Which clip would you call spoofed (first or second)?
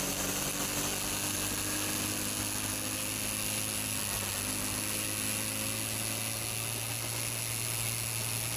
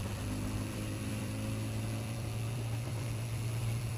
second